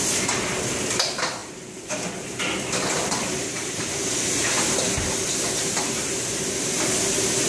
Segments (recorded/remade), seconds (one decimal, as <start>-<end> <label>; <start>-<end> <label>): 0.0-7.5 recorded